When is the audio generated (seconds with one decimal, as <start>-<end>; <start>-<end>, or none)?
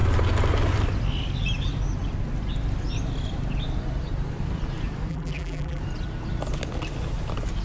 5.1-5.8